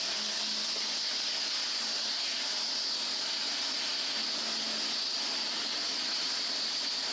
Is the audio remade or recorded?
recorded